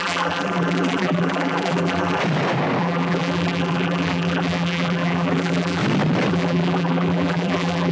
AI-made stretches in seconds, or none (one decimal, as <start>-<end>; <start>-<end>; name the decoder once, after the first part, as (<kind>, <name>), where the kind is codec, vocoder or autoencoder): 0.0-2.2 (vocoder, BigVGAN v2); 2.8-5.8; 6.3-7.9